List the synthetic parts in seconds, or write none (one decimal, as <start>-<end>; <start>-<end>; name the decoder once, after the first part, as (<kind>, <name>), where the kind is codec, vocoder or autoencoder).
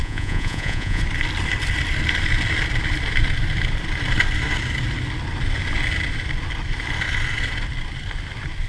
0.0-1.0 (vocoder, Vocos)